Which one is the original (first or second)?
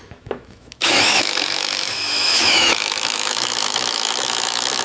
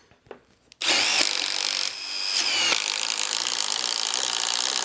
second